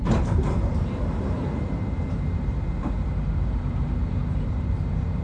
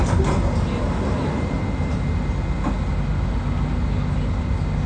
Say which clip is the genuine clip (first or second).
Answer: second